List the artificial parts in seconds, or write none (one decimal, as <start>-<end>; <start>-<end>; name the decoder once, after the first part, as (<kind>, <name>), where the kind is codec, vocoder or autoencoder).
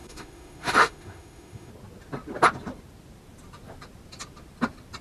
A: 0.0-1.7 (autoencoder, DAC-VAE)